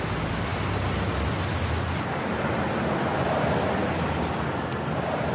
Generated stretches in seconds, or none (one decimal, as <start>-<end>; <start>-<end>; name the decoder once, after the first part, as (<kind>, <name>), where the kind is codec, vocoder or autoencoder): 3.8-5.3 (vocoder, BigVGAN v2)